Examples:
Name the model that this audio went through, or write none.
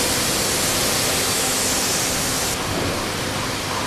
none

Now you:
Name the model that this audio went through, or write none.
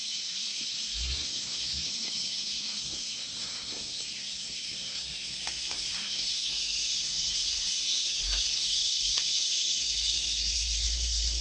codec, SNAC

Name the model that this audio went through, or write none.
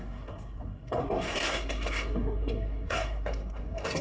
codec, SNAC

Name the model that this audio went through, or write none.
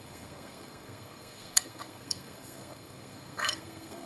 codec, SNAC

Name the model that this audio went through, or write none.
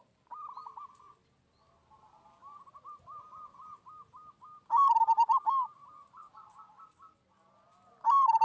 none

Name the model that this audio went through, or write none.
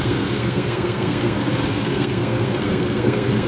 codec, SNAC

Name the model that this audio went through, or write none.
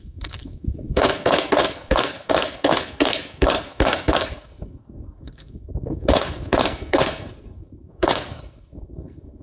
codec, SNAC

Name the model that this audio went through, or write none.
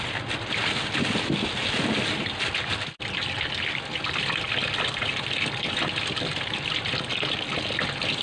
none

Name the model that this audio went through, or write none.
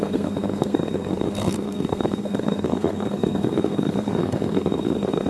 codec, SNAC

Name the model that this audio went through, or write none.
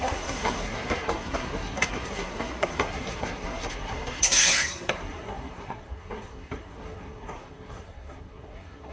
codec, SNAC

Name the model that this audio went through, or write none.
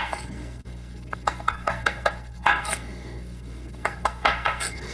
codec, SNAC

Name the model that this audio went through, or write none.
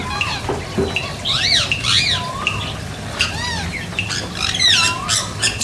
none